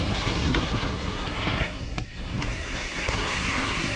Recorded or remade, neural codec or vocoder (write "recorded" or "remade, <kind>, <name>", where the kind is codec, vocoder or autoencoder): remade, codec, SNAC